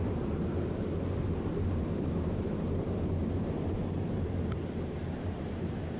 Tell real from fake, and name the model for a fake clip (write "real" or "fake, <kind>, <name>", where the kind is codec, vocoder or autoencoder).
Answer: fake, vocoder, BigVGAN v2